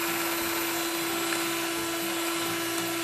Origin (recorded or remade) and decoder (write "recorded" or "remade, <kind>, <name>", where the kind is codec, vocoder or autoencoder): recorded